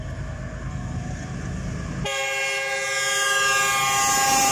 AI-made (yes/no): no